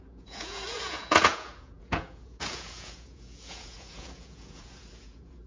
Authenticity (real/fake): fake